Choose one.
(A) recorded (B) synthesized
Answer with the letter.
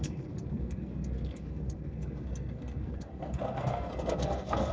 B